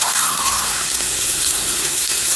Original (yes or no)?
no